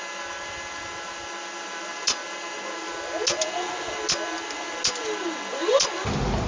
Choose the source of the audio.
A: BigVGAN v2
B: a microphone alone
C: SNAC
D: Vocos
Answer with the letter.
B